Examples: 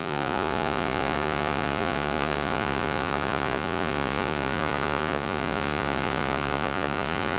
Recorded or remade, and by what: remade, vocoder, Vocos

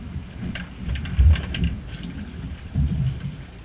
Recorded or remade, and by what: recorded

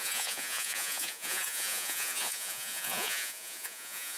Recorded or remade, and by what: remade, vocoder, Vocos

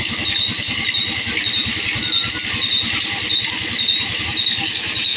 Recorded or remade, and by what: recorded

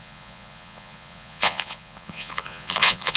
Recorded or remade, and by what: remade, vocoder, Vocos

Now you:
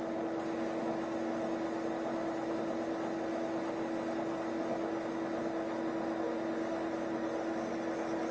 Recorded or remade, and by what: recorded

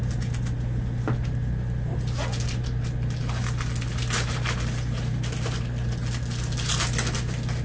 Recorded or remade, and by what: recorded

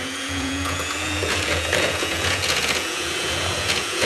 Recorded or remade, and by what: remade, vocoder, Vocos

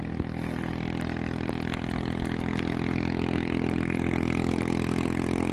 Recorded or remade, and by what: recorded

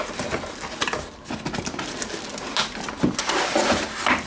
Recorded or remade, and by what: recorded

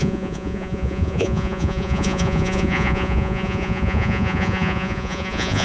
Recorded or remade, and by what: remade, vocoder, Vocos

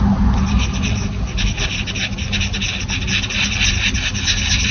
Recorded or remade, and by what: recorded